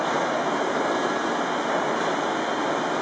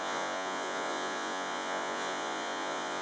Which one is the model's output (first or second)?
second